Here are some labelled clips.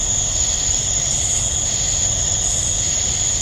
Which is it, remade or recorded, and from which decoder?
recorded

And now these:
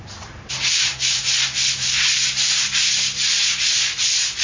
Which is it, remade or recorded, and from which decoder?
recorded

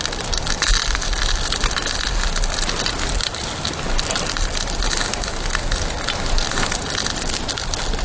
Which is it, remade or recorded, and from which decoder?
recorded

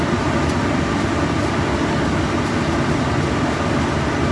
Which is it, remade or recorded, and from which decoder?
recorded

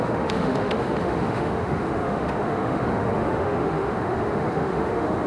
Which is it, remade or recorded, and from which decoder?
remade, autoencoder, DAC-VAE